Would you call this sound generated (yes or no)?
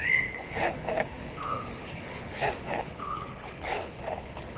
yes